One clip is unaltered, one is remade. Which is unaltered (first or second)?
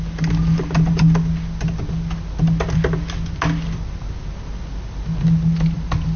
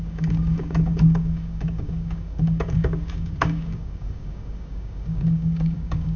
first